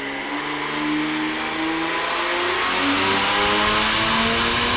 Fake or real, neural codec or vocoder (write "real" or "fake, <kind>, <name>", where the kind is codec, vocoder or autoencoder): real